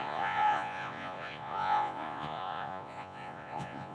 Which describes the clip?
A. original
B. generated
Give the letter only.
B